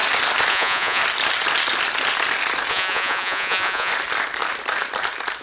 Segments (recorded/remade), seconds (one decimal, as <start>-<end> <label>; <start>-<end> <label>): 0.0-0.5 recorded; 0.5-1.0 remade; 1.0-2.7 recorded; 2.7-3.9 remade; 3.9-5.4 recorded